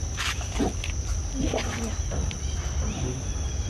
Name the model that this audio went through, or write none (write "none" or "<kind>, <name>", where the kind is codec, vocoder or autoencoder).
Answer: none